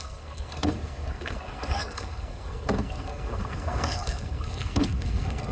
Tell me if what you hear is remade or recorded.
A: remade